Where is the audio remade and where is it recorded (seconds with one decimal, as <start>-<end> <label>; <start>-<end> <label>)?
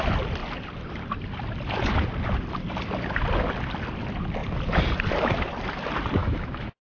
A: 0.0-6.2 recorded; 6.2-6.9 remade